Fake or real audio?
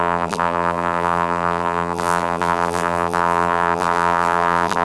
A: fake